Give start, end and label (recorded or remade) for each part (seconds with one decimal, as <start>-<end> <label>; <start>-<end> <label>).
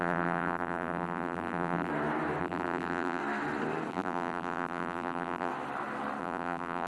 0.0-1.9 remade; 1.9-2.4 recorded; 2.4-3.2 remade; 3.2-3.9 recorded; 3.9-5.5 remade; 5.5-6.2 recorded; 6.2-6.9 remade